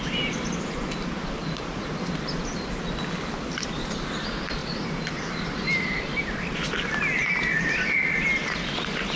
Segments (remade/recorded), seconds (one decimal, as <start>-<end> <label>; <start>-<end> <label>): 0.0-1.4 recorded; 1.4-1.9 remade; 1.9-4.6 recorded; 4.6-5.1 remade; 5.1-9.2 recorded